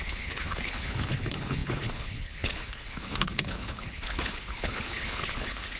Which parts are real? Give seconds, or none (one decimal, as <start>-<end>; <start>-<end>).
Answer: none